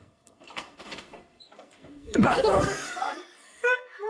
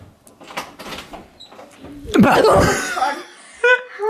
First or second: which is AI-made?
first